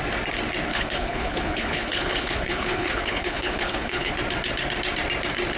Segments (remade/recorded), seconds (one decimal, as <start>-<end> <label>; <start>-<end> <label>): 0.0-0.7 recorded; 0.7-4.1 remade; 4.1-5.6 recorded